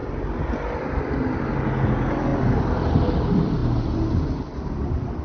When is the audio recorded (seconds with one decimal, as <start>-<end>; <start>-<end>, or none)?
0.0-5.2